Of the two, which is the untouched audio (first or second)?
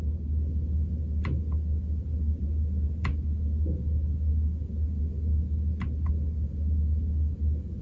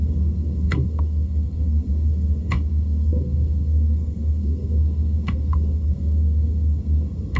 first